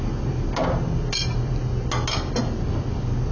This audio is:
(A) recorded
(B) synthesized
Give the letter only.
A